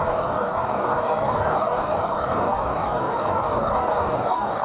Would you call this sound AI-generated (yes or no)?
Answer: yes